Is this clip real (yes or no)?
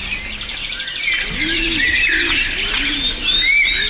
yes